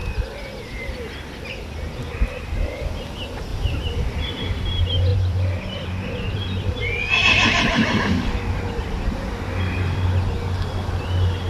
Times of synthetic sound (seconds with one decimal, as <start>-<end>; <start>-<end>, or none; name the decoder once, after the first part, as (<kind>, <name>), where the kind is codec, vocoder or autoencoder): 0.0-2.4 (vocoder, BigVGAN v2); 3.5-4.6; 5.1-6.1